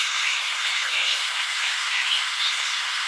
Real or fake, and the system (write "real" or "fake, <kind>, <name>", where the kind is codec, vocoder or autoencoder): fake, codec, SNAC